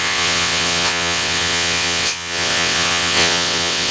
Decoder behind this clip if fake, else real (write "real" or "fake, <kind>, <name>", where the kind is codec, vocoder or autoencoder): fake, vocoder, WaveNeXt